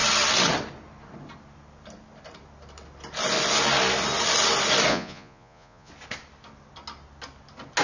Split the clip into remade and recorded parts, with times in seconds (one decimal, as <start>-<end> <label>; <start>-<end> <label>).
0.0-4.9 recorded; 4.9-5.9 remade; 5.9-7.8 recorded